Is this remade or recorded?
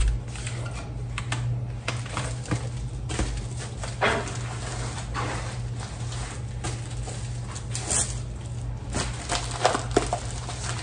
recorded